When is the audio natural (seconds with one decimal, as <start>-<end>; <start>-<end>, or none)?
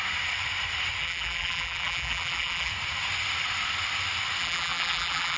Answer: 0.0-1.0; 2.7-4.4